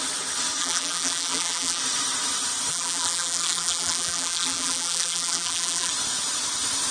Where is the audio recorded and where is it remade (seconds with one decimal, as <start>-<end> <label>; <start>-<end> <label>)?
0.0-0.6 recorded; 0.6-1.8 remade; 1.8-2.7 recorded; 2.7-5.9 remade; 5.9-6.9 recorded